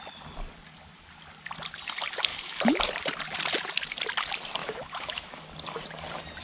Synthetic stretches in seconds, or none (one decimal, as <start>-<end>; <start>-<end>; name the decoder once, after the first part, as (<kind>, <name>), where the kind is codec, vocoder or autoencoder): 2.3-2.8 (autoencoder, DAC-VAE); 4.6-5.4